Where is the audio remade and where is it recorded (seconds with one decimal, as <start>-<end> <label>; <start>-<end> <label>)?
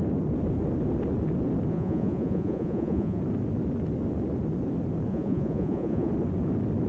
0.0-1.7 recorded; 1.7-3.2 remade; 3.2-5.1 recorded; 5.1-6.1 remade; 6.1-6.9 recorded